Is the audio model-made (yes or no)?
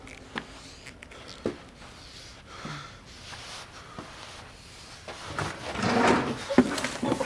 no